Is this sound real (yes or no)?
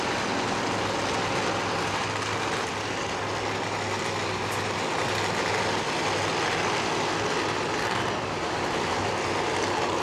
yes